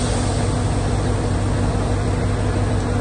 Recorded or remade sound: recorded